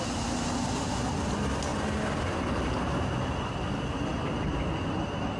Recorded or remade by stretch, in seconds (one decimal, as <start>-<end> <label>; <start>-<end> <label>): 0.0-1.7 remade; 1.7-2.7 recorded; 2.7-5.4 remade